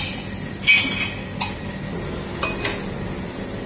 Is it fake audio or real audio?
real